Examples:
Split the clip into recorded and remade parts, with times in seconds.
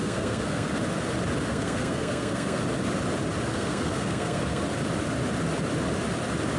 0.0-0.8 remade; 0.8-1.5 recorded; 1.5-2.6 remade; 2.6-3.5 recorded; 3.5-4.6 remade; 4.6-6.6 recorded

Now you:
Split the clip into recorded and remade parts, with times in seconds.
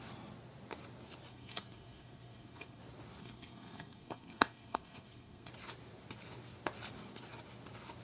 0.0-1.3 recorded; 1.3-2.8 remade; 2.8-3.2 recorded; 3.2-5.5 remade; 5.5-8.0 recorded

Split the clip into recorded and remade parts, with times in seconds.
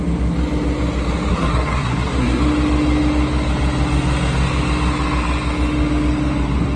0.0-1.3 recorded; 1.3-2.4 remade; 2.4-6.8 recorded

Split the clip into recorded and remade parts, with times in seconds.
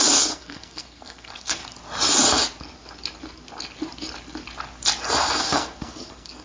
0.0-1.6 remade; 1.6-5.4 recorded; 5.4-6.4 remade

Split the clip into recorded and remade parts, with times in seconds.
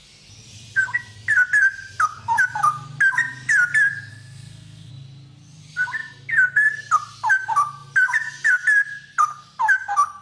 0.0-4.1 recorded; 4.1-4.9 remade; 4.9-10.2 recorded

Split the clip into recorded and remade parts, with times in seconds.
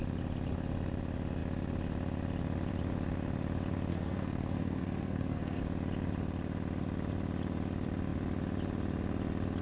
0.0-3.9 recorded; 3.9-5.6 remade; 5.6-9.6 recorded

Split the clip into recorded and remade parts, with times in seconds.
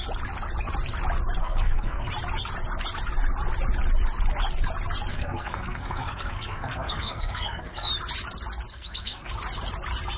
0.0-1.4 recorded; 1.4-2.1 remade; 2.1-5.1 recorded; 5.1-7.9 remade; 7.9-8.7 recorded; 8.7-9.3 remade; 9.3-10.2 recorded